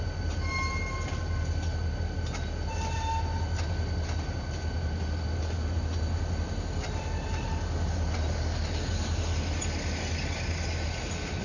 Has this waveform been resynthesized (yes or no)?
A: no